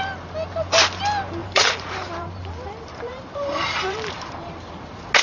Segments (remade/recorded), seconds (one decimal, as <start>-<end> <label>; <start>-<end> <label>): 0.0-1.4 recorded; 1.4-4.5 remade; 4.5-5.2 recorded